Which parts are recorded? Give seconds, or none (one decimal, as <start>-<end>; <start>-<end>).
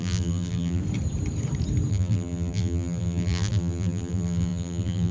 0.8-1.9